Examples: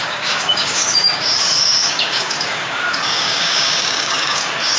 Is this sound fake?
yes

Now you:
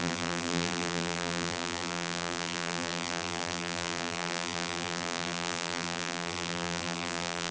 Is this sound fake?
yes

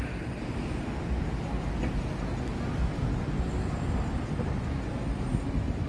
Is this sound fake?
no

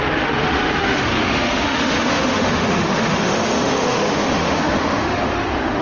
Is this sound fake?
yes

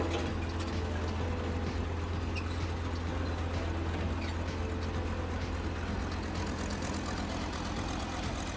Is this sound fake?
no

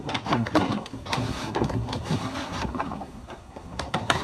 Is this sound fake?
yes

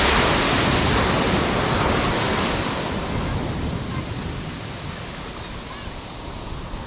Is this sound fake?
no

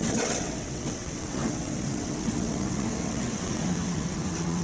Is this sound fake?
yes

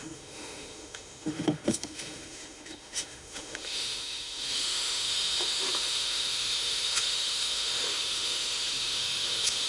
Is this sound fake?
yes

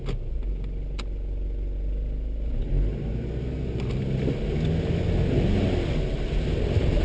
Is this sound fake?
no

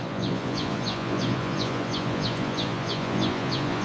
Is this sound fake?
yes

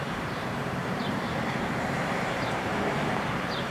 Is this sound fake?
yes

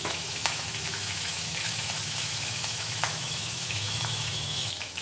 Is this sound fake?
yes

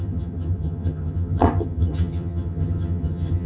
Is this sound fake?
yes